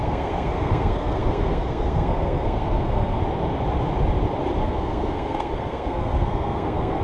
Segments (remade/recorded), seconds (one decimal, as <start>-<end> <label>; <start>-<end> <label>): 0.0-3.2 remade; 3.2-4.6 recorded; 4.6-7.0 remade